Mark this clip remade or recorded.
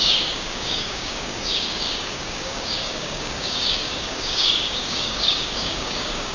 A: remade